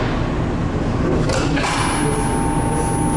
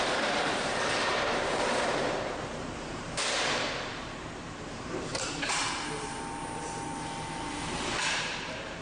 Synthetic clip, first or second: second